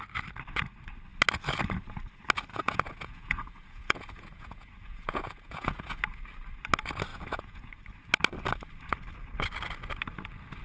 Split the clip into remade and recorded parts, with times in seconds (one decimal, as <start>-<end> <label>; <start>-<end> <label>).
0.0-2.5 recorded; 2.5-6.0 remade; 6.0-7.1 recorded; 7.1-7.7 remade; 7.7-10.6 recorded